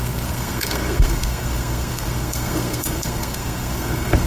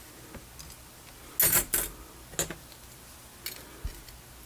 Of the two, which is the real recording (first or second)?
second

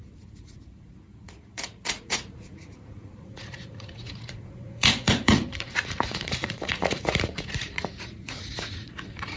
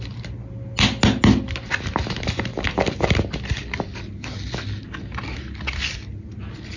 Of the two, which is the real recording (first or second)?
second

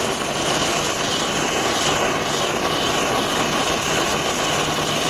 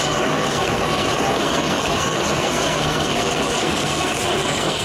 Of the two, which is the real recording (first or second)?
first